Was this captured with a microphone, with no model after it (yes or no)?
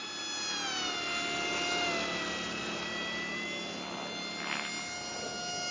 yes